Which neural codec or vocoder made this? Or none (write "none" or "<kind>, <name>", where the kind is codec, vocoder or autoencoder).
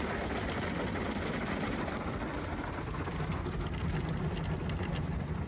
none